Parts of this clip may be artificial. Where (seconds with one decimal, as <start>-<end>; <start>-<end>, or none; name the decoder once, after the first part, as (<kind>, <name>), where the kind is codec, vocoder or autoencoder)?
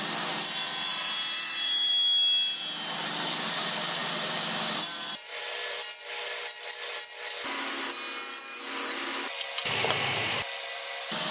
0.9-1.9 (vocoder, BigVGAN v2); 4.0-5.4